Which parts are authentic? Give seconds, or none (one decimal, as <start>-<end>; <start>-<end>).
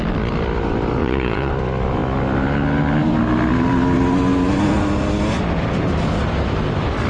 0.0-1.0; 1.5-7.1